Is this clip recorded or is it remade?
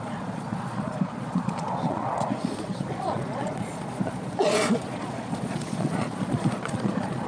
remade